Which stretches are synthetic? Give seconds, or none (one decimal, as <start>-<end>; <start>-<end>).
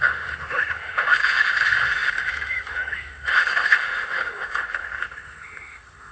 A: 0.0-6.1